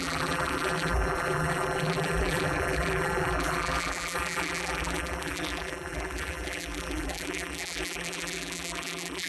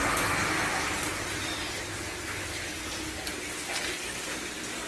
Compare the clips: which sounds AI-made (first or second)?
first